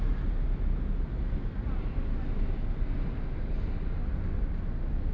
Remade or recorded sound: recorded